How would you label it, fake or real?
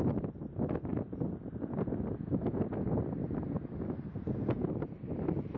real